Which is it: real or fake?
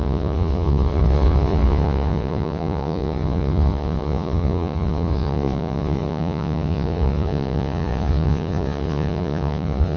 fake